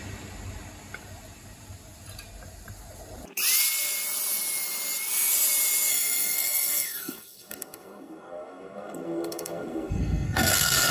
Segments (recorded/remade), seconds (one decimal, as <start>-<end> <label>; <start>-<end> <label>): 0.0-5.9 recorded; 5.9-10.9 remade